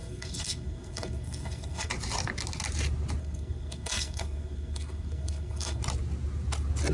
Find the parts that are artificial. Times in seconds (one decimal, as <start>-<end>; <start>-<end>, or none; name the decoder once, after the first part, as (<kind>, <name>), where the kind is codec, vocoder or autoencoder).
0.0-1.9 (codec, SNAC); 3.2-5.8